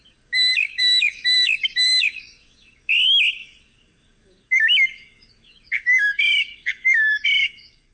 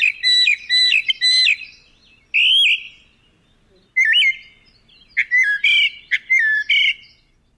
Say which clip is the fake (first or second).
first